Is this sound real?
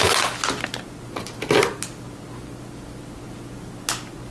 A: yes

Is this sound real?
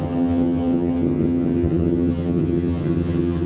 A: no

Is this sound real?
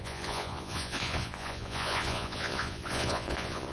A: no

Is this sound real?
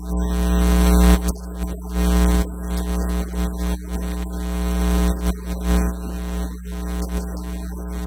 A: yes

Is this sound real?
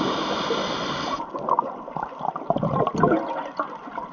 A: yes